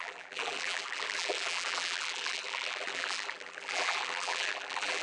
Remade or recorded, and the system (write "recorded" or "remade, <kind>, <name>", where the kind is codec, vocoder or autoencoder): remade, vocoder, BigVGAN v2